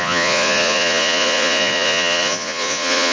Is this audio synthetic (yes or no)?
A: yes